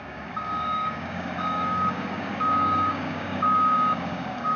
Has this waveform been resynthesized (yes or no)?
yes